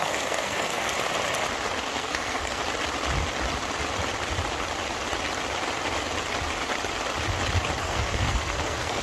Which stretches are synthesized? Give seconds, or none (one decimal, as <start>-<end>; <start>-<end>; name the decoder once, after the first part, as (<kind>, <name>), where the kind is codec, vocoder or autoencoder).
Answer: 0.0-0.9 (codec, SNAC); 1.9-2.6; 7.8-9.0